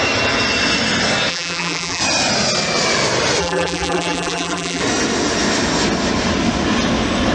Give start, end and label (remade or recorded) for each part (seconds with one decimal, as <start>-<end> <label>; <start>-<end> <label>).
0.0-1.3 recorded; 1.3-2.0 remade; 2.0-3.4 recorded; 3.4-4.8 remade; 4.8-7.3 recorded